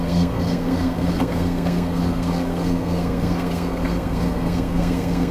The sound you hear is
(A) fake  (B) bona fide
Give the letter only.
A